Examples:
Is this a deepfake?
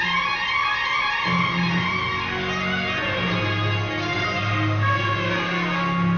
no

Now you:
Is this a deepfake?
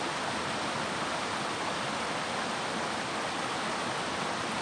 no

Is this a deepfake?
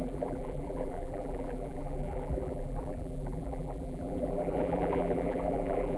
yes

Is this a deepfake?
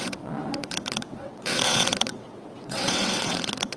yes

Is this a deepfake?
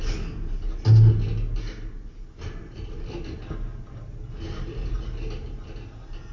no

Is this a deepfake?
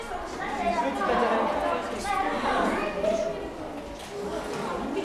no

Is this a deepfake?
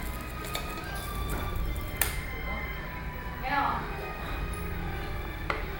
no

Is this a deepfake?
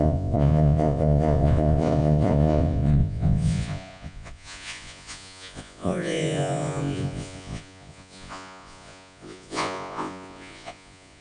yes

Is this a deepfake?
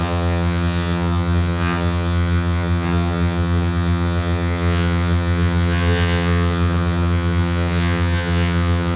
yes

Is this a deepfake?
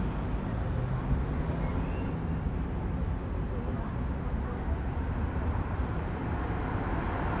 no